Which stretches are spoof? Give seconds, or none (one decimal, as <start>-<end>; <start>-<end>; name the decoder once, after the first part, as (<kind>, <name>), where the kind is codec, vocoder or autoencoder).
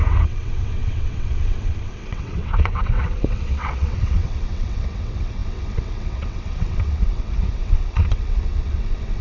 0.0-9.2 (vocoder, WaveNeXt)